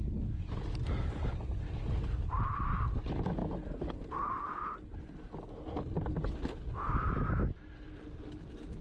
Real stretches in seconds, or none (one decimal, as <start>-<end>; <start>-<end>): 0.0-8.8